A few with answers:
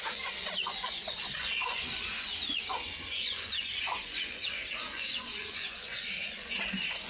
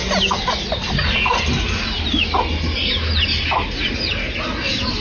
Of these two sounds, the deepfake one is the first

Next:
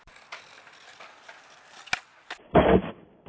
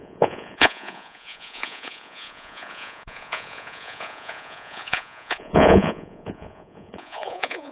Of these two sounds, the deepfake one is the second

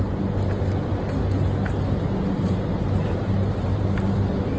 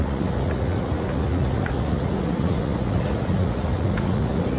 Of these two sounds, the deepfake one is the second